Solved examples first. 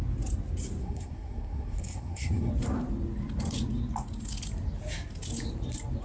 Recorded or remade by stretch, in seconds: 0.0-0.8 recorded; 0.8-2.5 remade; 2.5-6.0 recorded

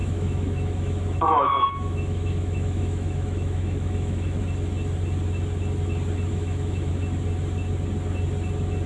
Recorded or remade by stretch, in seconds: 0.0-4.4 remade; 4.4-6.3 recorded; 6.3-6.9 remade; 6.9-8.9 recorded

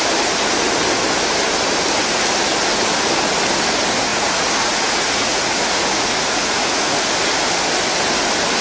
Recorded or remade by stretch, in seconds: 0.0-4.1 recorded; 4.1-7.0 remade; 7.0-8.6 recorded